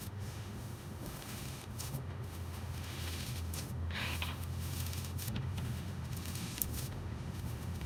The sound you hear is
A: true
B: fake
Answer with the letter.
B